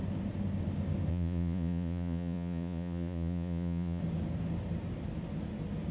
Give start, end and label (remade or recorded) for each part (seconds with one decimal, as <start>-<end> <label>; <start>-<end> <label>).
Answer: 0.0-1.1 recorded; 1.1-4.0 remade; 4.0-5.9 recorded